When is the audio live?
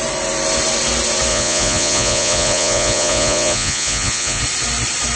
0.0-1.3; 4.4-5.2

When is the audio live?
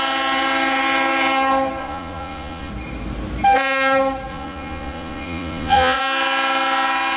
0.0-1.8; 2.7-4.3; 6.0-7.2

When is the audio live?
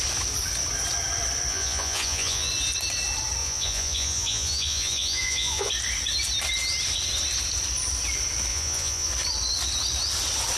0.0-1.5; 2.5-3.4; 5.7-8.5; 9.1-10.6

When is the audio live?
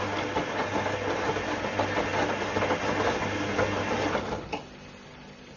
0.0-5.6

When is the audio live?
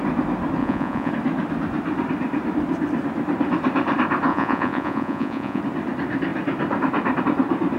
0.0-0.6; 1.1-4.3; 5.6-7.8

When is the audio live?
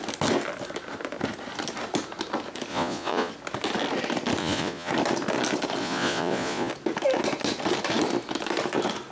0.0-2.7; 3.3-4.4; 4.9-5.8; 6.7-9.1